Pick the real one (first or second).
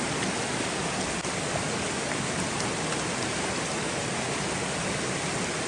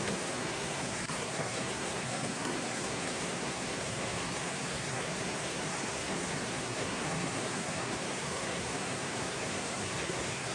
first